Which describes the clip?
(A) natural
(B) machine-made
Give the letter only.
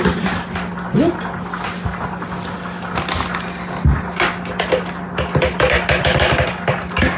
A